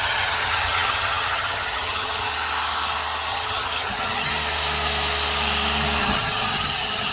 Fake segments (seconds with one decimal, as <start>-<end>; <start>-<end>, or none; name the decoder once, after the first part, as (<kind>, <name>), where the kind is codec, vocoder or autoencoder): 0.0-2.3 (vocoder, HiFi-GAN); 3.3-4.3; 6.0-7.1